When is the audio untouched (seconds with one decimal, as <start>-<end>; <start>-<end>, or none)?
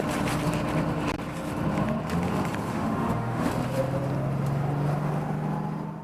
0.0-2.7; 3.5-6.0